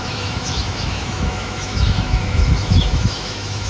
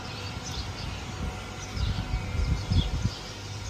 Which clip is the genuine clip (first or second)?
second